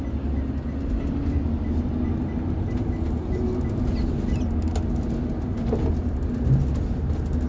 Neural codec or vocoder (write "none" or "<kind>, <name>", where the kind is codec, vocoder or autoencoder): none